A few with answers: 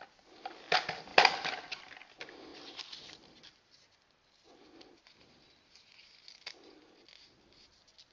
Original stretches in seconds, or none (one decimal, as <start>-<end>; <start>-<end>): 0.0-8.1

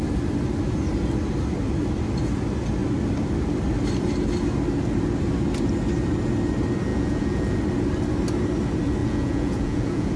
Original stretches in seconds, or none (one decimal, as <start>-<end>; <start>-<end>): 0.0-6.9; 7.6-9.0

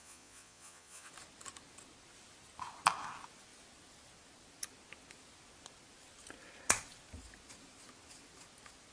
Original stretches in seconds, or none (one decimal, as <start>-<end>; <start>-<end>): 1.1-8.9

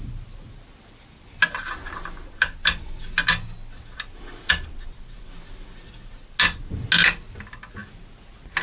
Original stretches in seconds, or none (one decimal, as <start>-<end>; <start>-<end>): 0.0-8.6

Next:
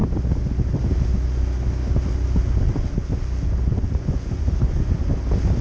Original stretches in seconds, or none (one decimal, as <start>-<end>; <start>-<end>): 0.0-3.7; 5.1-5.6

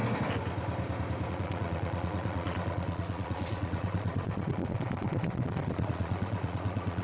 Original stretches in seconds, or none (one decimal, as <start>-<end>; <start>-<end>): 0.0-1.3

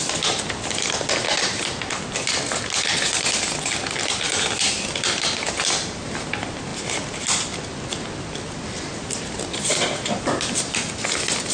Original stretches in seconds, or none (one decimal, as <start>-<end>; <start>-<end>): 0.0-11.5